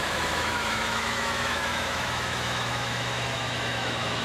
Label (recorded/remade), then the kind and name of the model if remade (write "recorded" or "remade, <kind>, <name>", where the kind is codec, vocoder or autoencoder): remade, autoencoder, DAC-VAE